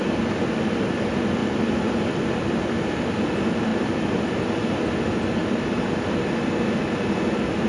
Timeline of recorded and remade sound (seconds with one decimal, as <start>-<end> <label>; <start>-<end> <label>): 0.0-1.4 recorded; 1.4-2.4 remade; 2.4-3.7 recorded; 3.7-4.7 remade; 4.7-5.4 recorded; 5.4-5.9 remade; 5.9-7.7 recorded